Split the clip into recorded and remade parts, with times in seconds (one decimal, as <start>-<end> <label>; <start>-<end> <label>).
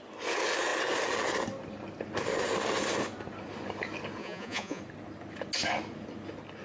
0.0-4.2 recorded; 4.2-4.8 remade; 4.8-6.6 recorded